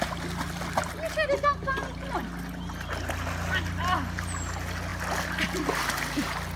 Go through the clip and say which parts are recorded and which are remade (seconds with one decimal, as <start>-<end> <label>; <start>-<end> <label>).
0.0-6.6 recorded